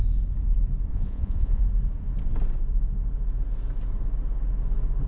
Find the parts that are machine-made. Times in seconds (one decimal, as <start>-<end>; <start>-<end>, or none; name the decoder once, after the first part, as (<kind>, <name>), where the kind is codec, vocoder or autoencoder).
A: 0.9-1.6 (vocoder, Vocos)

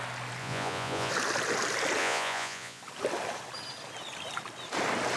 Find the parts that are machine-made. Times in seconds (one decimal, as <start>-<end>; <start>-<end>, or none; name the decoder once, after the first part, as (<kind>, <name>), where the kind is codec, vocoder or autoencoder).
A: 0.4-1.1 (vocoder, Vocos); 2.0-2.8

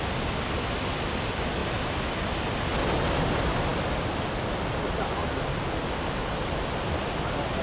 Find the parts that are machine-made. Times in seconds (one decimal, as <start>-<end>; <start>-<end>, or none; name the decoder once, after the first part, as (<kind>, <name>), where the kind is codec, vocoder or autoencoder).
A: none

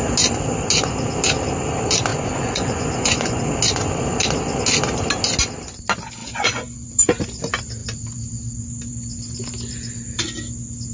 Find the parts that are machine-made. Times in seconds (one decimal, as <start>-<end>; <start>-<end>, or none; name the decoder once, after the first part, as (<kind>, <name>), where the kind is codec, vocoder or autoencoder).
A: 2.1-3.4 (vocoder, Vocos); 6.2-7.0

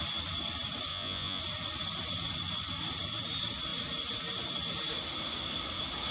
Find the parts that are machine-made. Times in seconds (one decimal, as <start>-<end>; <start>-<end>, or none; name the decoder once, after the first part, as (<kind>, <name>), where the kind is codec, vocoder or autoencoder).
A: 0.9-1.4 (vocoder, Vocos)

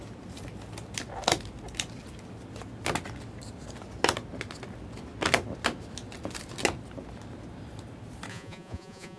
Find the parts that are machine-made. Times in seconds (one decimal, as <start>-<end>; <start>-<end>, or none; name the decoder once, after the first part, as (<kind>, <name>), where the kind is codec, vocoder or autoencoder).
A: 8.3-9.2 (vocoder, Vocos)

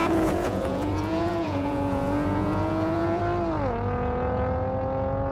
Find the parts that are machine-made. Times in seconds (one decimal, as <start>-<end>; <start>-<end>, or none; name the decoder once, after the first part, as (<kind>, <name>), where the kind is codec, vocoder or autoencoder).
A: 0.0-3.2 (vocoder, Vocos)

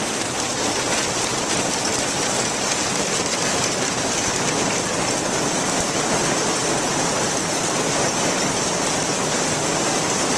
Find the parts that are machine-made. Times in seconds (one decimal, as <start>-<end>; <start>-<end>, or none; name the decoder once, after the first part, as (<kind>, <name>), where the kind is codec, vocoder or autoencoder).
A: none